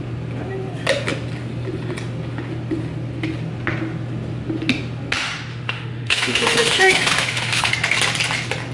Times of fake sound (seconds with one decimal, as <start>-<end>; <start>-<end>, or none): 5.5-7.7